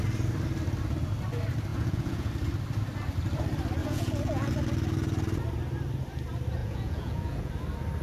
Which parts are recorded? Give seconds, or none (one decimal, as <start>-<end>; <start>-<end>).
0.0-1.7; 2.3-3.8; 4.5-6.6; 7.5-8.0